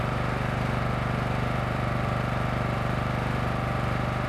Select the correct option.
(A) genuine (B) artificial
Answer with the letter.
B